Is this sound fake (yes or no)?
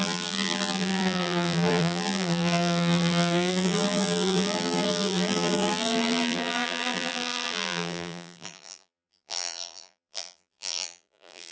yes